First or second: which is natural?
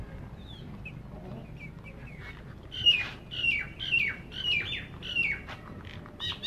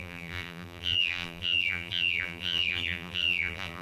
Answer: first